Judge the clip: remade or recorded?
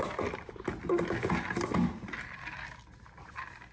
recorded